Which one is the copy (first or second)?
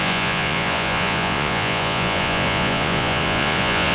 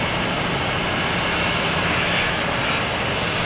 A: first